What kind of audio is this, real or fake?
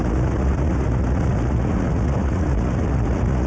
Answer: fake